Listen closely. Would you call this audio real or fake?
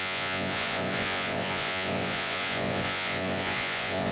fake